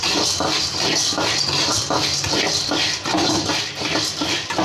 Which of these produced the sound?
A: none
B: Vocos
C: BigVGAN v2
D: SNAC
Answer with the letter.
A